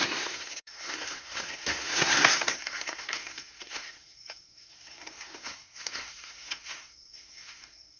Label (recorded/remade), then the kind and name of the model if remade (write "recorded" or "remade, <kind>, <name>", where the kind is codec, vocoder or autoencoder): remade, codec, SNAC